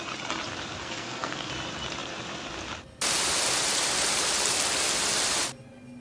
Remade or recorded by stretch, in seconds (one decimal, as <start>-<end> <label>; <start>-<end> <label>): 0.0-0.8 recorded; 0.8-1.5 remade; 1.5-6.0 recorded